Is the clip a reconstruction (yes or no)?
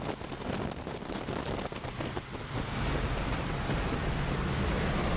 no